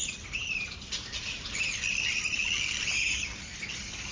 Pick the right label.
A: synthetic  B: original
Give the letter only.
B